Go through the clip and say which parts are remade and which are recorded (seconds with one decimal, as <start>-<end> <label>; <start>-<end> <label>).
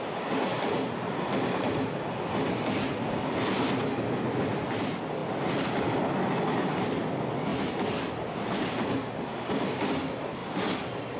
0.0-11.2 recorded